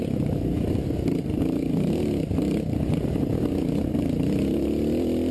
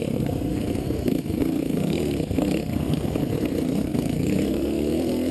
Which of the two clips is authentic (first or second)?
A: first